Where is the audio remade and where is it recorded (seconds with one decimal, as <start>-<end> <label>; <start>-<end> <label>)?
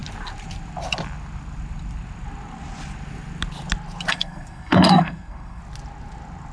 0.0-4.1 recorded; 4.1-5.6 remade; 5.6-6.5 recorded